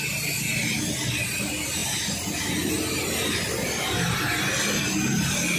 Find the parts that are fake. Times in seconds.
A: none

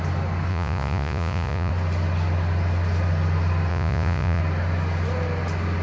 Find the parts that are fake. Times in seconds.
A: 0.5-1.7 (vocoder, Vocos); 3.7-4.4